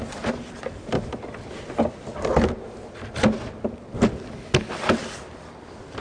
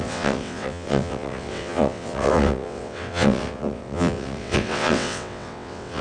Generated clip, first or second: second